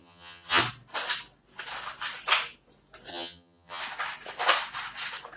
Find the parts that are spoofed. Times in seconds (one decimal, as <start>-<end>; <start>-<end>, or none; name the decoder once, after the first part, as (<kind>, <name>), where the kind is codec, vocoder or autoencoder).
0.0-0.6 (vocoder, HiFi-GAN); 3.1-3.8

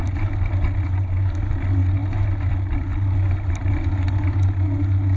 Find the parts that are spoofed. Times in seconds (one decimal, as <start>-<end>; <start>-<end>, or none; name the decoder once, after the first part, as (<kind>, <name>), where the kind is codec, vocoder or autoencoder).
none

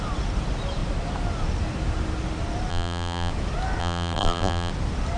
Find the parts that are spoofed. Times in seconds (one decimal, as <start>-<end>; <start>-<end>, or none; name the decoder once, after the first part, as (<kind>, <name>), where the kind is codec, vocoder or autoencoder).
2.7-3.3 (vocoder, BigVGAN v2); 3.8-4.7

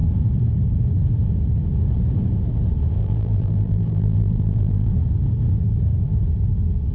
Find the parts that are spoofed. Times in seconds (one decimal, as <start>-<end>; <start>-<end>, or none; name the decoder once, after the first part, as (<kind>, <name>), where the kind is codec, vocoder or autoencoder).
3.0-4.9 (vocoder, BigVGAN v2)